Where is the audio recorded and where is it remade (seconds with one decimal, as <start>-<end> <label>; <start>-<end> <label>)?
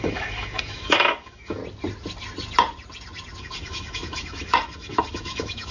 0.0-1.6 remade; 1.6-3.4 recorded; 3.4-5.7 remade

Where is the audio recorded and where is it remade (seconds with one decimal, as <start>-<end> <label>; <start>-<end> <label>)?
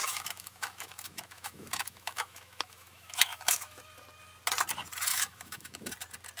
0.0-3.8 remade; 3.8-5.1 recorded; 5.1-5.9 remade; 5.9-6.4 recorded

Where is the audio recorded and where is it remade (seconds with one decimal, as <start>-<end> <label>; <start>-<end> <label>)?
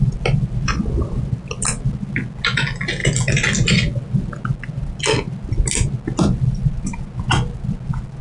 0.0-8.2 recorded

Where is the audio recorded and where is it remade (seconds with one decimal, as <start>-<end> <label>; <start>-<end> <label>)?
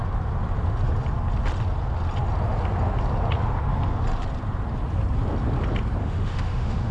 0.0-6.0 recorded; 6.0-6.9 remade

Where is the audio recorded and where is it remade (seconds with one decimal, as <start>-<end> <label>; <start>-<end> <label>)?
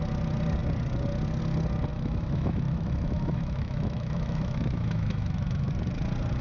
0.0-1.9 recorded; 1.9-5.7 remade; 5.7-6.4 recorded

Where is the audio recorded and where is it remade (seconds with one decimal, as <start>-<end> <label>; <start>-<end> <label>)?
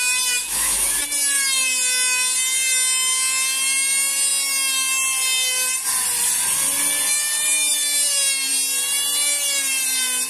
0.0-0.4 recorded; 0.4-1.0 remade; 1.0-10.3 recorded